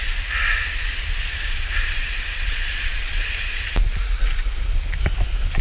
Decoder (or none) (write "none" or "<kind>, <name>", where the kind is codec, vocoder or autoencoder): none